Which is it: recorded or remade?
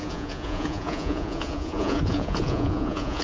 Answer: remade